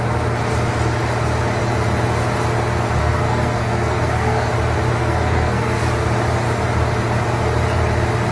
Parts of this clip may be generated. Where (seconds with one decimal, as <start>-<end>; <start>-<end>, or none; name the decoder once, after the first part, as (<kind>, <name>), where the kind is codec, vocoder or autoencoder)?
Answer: 3.0-4.5 (codec, SNAC); 5.0-5.8

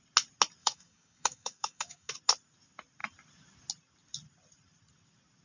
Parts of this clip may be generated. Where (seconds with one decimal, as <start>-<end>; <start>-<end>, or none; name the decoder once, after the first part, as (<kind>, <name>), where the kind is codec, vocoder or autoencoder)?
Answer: 0.6-2.1 (codec, DAC)